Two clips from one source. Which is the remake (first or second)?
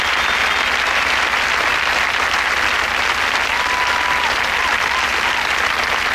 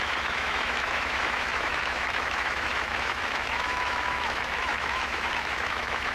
second